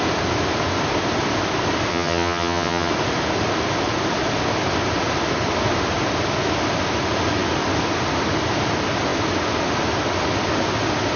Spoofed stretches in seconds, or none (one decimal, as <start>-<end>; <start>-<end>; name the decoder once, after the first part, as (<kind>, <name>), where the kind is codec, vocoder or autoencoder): 1.9-2.9 (vocoder, HiFi-GAN)